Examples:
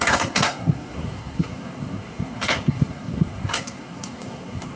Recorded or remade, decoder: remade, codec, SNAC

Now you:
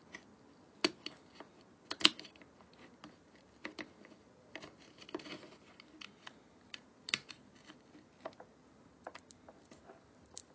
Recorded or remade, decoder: recorded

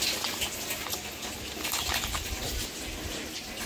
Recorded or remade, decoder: recorded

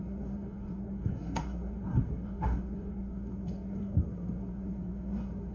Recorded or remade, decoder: remade, codec, SNAC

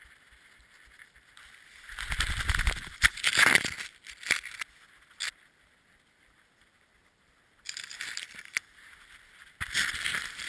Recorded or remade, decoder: recorded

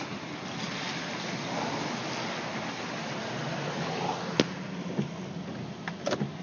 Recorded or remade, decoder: recorded